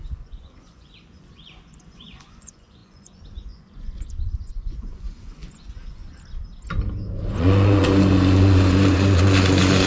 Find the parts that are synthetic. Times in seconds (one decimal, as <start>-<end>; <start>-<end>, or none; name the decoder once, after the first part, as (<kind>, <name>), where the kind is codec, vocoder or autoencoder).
0.0-6.0 (vocoder, Vocos); 7.3-9.9